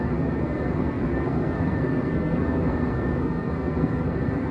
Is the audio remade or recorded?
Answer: remade